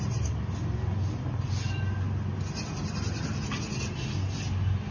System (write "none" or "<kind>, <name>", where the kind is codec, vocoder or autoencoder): none